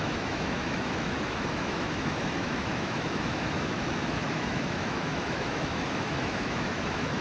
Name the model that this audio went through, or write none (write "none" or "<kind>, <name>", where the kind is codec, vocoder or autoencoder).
autoencoder, DAC-VAE